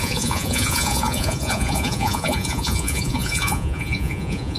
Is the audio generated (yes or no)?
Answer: yes